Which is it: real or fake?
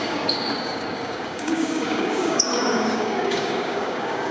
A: fake